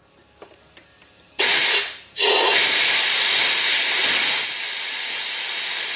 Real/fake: real